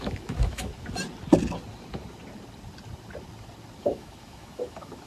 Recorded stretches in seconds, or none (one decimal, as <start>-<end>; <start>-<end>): 0.7-3.8